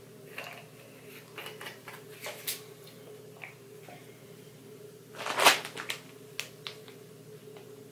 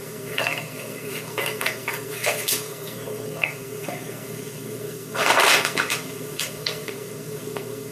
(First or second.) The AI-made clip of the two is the second